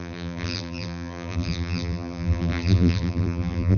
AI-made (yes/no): yes